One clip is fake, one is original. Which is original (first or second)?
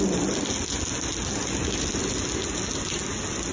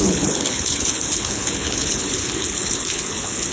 first